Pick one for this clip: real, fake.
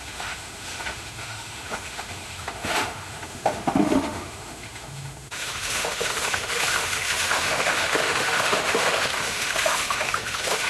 fake